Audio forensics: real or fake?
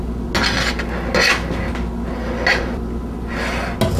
real